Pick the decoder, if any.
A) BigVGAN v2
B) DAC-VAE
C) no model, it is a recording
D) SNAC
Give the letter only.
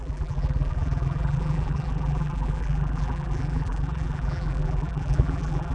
A